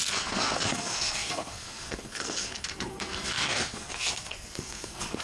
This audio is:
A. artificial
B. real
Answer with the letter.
A